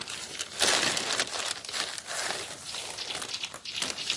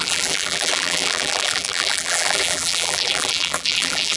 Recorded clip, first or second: first